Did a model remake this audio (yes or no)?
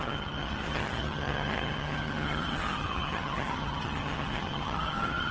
yes